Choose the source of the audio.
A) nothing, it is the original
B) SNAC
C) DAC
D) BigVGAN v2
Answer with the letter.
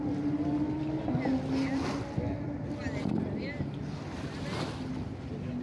A